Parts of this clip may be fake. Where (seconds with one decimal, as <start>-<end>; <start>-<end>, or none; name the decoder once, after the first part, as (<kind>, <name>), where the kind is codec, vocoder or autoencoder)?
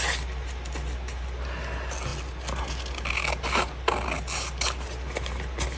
none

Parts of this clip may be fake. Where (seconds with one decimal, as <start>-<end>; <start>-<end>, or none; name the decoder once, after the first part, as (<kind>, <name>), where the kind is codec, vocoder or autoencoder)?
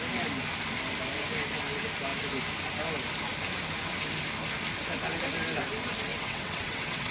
6.1-7.1 (vocoder, WaveNeXt)